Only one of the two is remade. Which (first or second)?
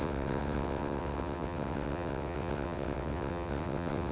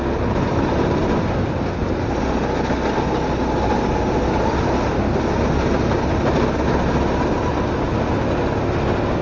first